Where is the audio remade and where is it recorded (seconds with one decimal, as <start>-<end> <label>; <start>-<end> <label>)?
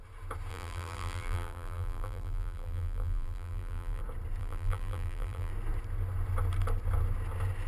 0.0-0.5 recorded; 0.5-4.0 remade; 4.0-4.4 recorded; 4.4-5.5 remade; 5.5-7.7 recorded